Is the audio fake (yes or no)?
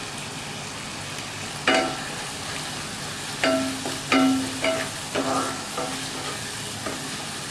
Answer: no